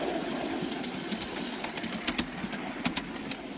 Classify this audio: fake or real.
real